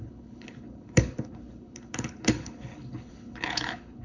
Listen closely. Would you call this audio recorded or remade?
remade